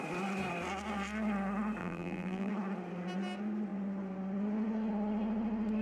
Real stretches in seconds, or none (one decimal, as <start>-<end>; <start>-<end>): 0.0-1.8; 2.5-5.8